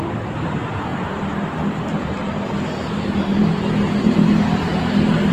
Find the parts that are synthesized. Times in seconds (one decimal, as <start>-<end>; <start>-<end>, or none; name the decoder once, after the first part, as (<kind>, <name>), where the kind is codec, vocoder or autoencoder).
0.0-0.9 (vocoder, BigVGAN v2); 2.9-5.3